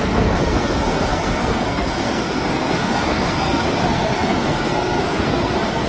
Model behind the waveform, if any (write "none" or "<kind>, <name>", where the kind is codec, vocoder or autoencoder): codec, SNAC